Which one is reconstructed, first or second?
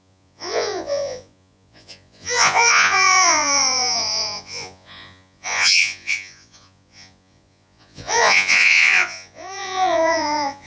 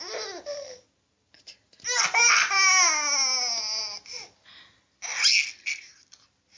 first